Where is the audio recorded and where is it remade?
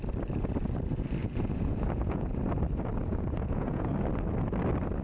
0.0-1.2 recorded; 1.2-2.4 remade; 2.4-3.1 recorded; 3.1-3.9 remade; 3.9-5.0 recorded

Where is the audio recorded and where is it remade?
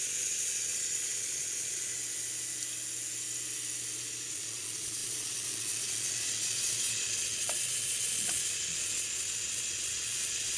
0.0-1.9 remade; 1.9-4.3 recorded; 4.3-10.6 remade